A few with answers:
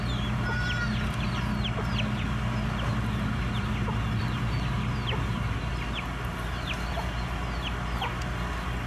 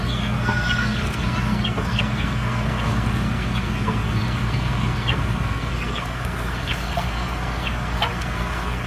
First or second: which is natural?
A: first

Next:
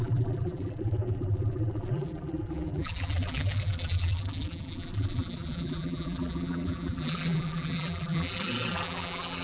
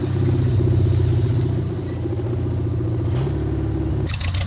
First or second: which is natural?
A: second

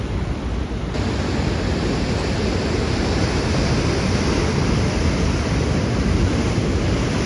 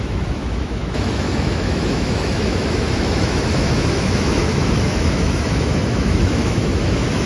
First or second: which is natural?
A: first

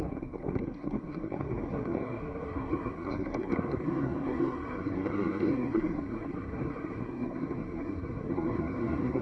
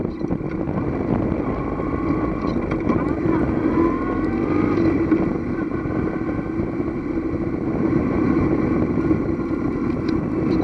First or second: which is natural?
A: second